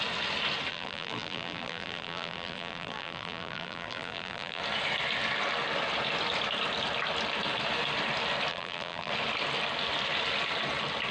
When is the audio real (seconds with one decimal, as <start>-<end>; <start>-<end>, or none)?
0.0-0.7; 4.6-8.5; 9.1-11.1